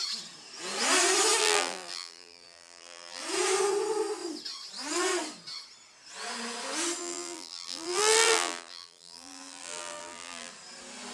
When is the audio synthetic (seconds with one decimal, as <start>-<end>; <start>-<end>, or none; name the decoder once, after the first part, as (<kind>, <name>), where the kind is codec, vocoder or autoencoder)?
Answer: 1.4-3.2 (vocoder, BigVGAN v2); 7.0-10.5